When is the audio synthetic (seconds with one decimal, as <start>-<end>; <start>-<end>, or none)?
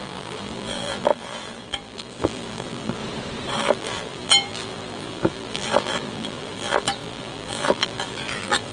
0.0-3.0; 3.6-8.7